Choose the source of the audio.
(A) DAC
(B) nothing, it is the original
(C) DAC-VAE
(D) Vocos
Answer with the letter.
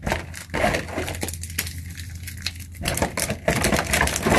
B